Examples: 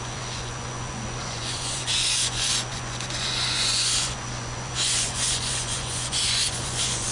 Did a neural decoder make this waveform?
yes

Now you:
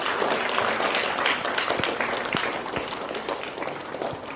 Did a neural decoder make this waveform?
no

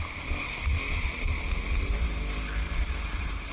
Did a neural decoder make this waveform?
no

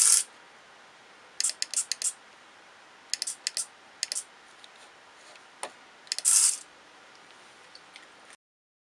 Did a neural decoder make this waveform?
no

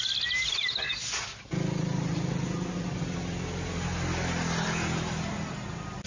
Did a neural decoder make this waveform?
no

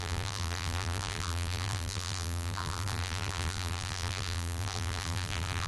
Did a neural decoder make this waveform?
yes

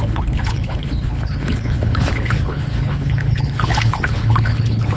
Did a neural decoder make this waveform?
yes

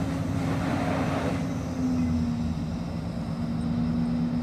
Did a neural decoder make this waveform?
no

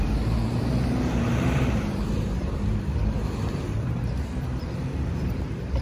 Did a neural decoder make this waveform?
yes